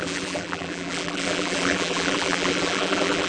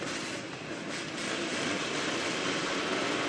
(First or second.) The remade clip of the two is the first